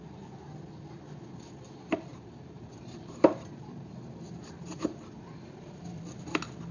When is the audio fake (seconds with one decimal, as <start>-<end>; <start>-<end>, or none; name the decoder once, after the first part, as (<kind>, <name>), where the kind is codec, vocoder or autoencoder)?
2.1-6.1 (vocoder, BigVGAN v2)

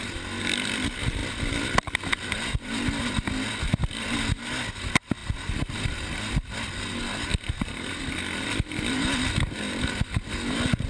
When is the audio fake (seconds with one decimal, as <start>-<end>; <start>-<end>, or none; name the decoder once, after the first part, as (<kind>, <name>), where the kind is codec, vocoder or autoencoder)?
none

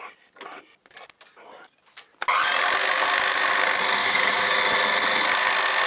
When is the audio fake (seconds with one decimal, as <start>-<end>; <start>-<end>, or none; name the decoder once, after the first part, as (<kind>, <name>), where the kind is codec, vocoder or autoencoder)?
4.0-4.6 (codec, DAC)

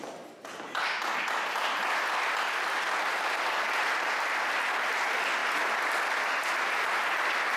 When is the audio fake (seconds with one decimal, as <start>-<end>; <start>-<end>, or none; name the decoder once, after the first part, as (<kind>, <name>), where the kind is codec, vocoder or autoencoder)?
none